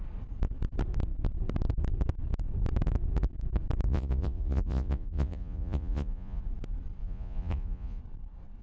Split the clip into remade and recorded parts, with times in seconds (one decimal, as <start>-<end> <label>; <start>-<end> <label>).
0.0-3.9 recorded; 3.9-6.4 remade; 6.4-7.0 recorded; 7.0-8.0 remade; 8.0-8.6 recorded